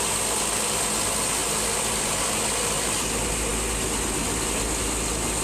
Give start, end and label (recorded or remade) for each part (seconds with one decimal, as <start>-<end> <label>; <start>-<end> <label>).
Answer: 0.0-5.4 recorded